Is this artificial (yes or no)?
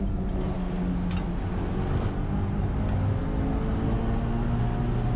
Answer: no